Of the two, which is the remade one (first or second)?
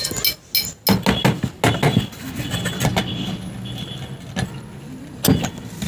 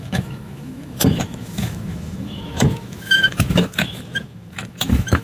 second